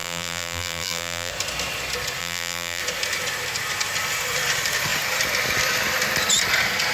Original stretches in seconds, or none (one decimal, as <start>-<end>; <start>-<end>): 1.3-2.2; 2.8-6.9

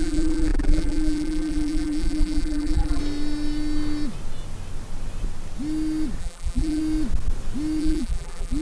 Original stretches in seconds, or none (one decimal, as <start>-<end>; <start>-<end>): 3.0-6.2; 6.8-7.8

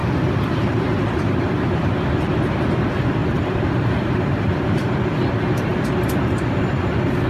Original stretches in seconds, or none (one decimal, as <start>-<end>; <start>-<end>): 2.7-3.2; 5.3-7.3

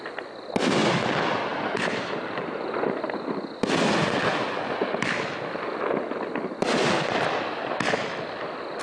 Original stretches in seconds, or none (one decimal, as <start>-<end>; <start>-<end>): 0.0-1.5; 2.6-8.8

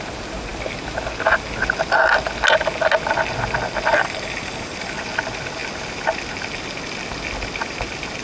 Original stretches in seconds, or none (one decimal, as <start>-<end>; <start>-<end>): 0.0-3.9; 5.0-8.2

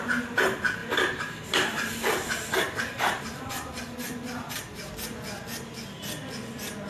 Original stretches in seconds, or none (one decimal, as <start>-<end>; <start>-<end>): 0.0-0.8; 4.9-6.9

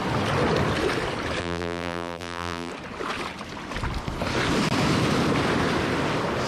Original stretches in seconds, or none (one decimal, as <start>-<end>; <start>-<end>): 0.0-1.4; 2.7-6.5

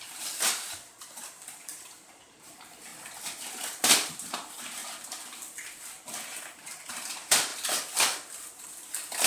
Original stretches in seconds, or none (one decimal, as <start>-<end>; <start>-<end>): 2.9-4.1; 4.8-5.8; 7.5-9.3